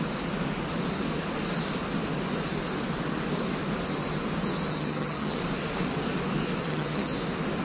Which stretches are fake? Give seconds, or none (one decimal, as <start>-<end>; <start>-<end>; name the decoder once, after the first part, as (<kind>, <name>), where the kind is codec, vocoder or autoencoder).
4.7-5.4 (vocoder, HiFi-GAN); 6.6-7.1